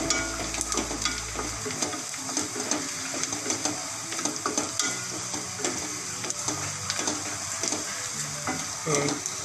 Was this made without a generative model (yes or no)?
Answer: yes